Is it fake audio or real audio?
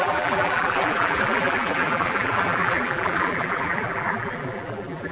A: fake